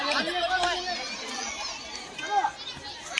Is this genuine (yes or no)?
yes